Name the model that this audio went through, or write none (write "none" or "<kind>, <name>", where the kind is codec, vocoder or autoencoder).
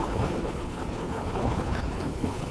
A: codec, HILCodec